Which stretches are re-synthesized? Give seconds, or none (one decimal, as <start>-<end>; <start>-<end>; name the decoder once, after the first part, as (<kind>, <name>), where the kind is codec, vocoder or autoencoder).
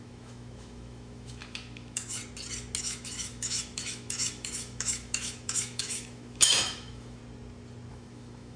0.0-2.2 (autoencoder, DAC-VAE); 2.8-7.2; 7.9-8.6